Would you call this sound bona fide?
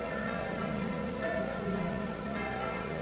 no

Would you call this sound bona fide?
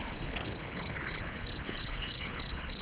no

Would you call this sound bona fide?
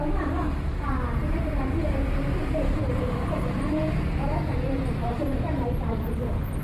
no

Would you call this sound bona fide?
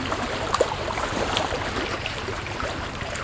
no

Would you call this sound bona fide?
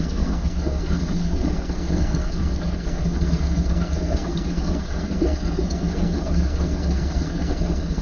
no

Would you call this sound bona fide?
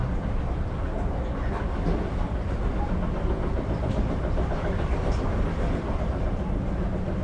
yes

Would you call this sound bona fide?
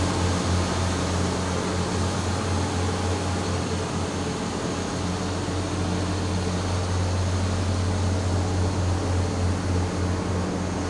yes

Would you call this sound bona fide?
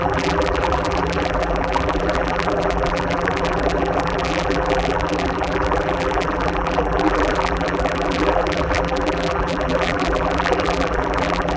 no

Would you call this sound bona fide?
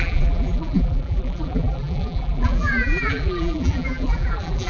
no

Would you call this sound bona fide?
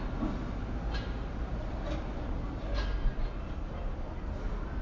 yes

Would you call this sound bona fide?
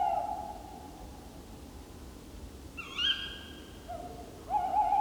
yes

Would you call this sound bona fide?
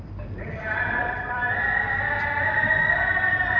no